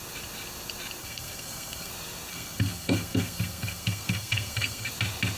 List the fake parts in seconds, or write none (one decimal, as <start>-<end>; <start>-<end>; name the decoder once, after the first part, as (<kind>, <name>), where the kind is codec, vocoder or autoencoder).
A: 1.0-1.9 (codec, SNAC); 2.3-4.9